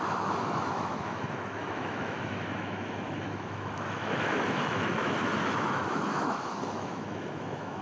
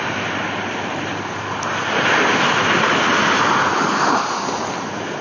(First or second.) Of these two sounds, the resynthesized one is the first